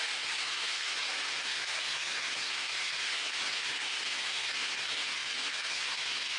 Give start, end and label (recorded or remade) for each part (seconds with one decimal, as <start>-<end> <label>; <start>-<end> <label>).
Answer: 0.0-6.4 remade